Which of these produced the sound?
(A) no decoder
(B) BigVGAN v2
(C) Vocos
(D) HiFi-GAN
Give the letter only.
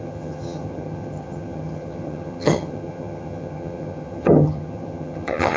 D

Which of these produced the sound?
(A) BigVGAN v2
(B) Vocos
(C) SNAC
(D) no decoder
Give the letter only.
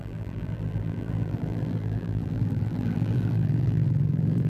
A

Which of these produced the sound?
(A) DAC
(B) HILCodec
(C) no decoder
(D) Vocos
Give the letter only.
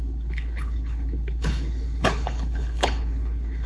B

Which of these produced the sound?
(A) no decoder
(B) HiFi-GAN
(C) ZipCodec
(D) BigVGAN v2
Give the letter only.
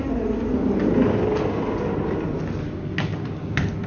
A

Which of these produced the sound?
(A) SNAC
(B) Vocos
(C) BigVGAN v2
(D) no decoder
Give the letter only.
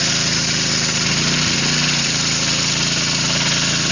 D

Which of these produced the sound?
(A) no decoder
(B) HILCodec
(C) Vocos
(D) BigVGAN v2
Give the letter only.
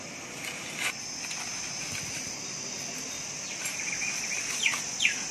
A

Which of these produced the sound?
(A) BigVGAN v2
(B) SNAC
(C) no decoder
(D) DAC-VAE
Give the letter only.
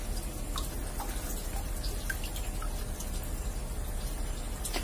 C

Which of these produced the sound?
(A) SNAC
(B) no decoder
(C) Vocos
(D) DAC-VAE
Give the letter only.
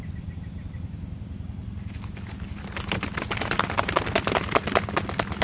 B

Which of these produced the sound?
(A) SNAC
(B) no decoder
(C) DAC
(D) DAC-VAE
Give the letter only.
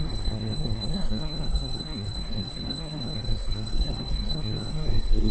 A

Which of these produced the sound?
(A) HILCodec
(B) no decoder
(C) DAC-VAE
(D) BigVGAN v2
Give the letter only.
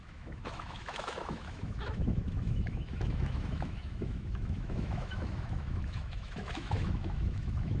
C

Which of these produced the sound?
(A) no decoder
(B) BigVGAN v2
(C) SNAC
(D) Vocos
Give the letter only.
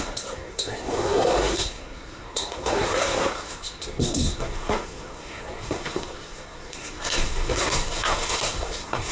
C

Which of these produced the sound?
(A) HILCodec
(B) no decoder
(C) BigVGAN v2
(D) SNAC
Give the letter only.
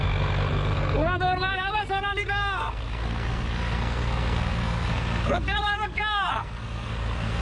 D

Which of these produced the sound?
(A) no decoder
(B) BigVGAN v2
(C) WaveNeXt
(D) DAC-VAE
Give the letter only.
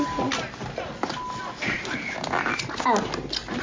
A